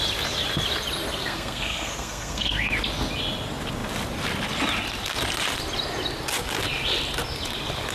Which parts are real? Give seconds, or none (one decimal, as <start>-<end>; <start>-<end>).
0.0-1.1; 2.7-7.9